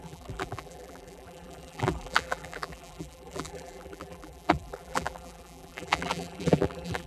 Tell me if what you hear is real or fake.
fake